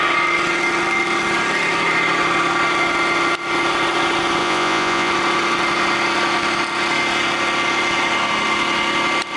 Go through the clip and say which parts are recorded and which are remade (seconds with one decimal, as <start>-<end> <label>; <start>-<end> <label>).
0.0-4.4 recorded; 4.4-5.1 remade; 5.1-9.4 recorded